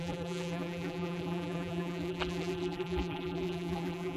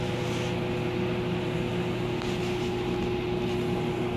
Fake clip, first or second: first